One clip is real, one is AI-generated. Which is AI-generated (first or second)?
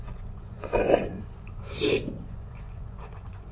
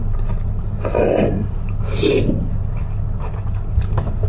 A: first